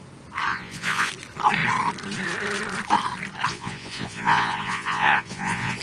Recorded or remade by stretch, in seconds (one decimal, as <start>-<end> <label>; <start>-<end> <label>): 0.0-0.5 recorded; 0.5-1.1 remade; 1.1-3.5 recorded; 3.5-5.8 remade